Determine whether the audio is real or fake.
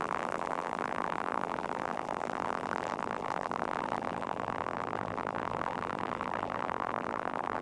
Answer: fake